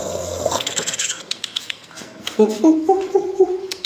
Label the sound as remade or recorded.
remade